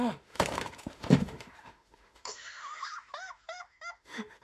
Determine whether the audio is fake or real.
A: fake